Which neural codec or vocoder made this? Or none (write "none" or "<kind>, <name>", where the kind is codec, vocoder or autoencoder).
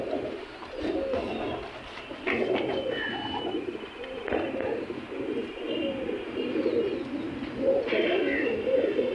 none